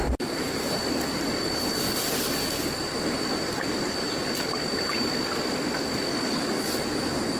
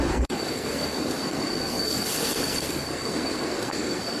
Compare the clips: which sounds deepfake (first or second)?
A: second